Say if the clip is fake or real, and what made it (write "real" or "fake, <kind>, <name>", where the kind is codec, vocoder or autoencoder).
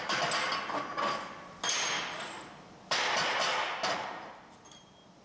real